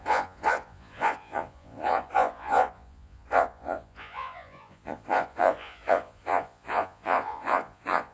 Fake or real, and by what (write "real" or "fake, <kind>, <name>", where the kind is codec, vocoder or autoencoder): fake, vocoder, Vocos